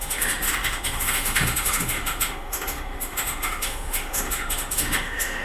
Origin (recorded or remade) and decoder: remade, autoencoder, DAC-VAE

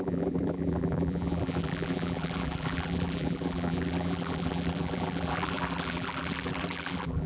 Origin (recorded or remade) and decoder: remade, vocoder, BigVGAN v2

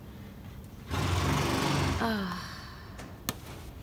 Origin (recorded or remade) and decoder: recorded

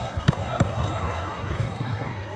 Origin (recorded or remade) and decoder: remade, codec, SNAC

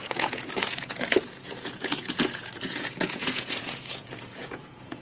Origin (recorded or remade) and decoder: remade, vocoder, Vocos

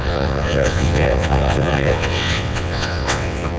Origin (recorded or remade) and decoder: remade, vocoder, WaveNeXt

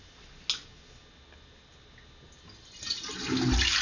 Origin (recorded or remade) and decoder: recorded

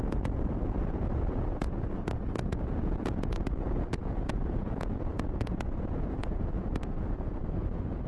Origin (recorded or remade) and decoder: remade, vocoder, Vocos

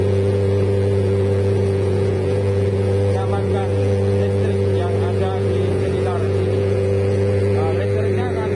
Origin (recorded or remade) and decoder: remade, vocoder, Vocos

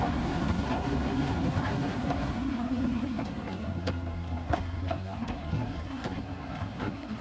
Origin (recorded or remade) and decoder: remade, codec, SNAC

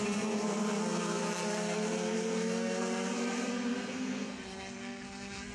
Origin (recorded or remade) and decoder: remade, codec, SNAC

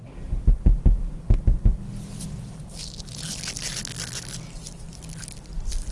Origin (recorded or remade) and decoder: recorded